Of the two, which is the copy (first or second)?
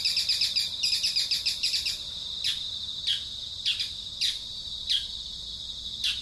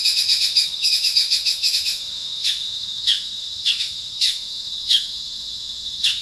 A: second